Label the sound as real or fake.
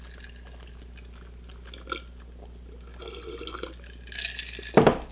real